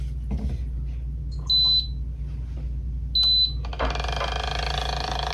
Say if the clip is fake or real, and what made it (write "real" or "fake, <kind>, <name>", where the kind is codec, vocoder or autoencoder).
real